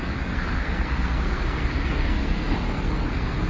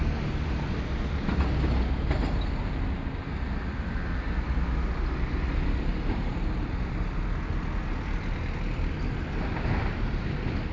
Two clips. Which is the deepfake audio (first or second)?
first